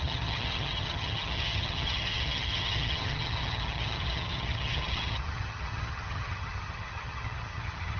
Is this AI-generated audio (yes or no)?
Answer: yes